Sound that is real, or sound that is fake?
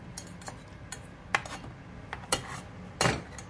real